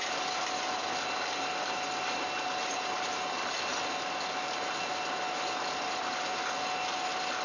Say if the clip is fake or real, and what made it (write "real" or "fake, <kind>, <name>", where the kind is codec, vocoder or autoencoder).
real